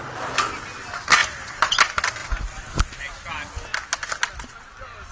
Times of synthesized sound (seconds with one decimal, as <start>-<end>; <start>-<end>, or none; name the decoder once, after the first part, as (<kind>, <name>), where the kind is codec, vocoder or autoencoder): none